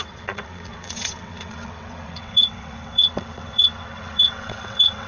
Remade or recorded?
remade